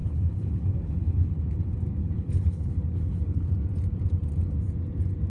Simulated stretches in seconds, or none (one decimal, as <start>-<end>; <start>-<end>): 0.0-1.4; 2.0-3.5